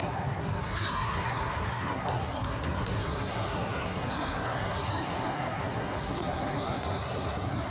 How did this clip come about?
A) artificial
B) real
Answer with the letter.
A